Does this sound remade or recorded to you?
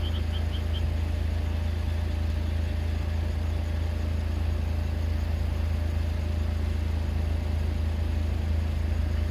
recorded